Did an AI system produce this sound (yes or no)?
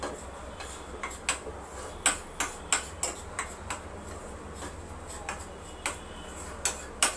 no